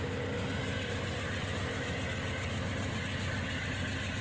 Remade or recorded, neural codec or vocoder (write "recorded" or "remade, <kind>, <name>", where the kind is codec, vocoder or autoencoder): recorded